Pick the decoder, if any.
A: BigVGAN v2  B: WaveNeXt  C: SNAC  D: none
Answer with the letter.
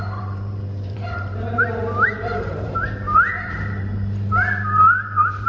A